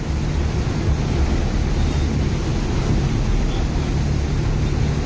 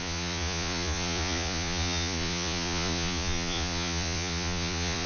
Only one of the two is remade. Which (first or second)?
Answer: second